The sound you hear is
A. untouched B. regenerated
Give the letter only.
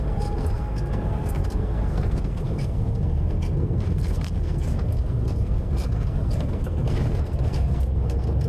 B